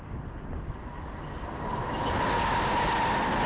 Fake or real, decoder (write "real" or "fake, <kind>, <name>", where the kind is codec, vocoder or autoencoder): real